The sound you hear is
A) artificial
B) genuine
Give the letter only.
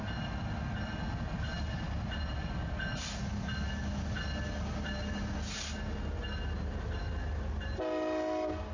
B